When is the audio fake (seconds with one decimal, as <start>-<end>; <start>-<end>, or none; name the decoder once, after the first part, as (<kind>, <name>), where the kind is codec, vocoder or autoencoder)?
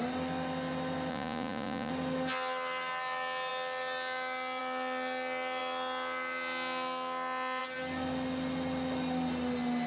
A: 1.1-1.9 (vocoder, Vocos)